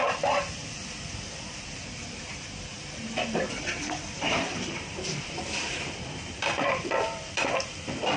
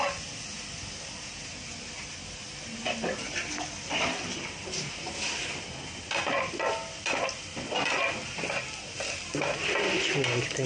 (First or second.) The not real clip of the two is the first